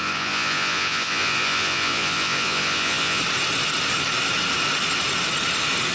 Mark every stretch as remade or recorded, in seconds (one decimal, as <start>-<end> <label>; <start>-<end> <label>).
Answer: 0.0-3.2 remade; 3.2-5.9 recorded